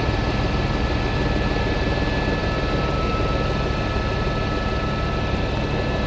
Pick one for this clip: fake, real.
real